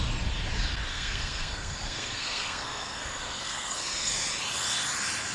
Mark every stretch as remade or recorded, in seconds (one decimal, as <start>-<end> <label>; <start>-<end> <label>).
0.0-0.9 recorded; 0.9-4.1 remade; 4.1-5.3 recorded